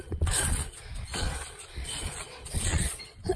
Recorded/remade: remade